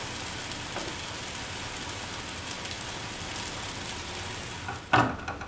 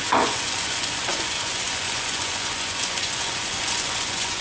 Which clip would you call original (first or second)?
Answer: first